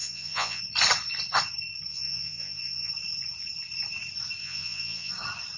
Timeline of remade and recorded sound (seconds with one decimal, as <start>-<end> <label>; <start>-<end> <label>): 0.0-0.6 remade; 0.6-1.9 recorded; 1.9-2.9 remade; 2.9-4.4 recorded; 4.4-5.1 remade; 5.1-5.6 recorded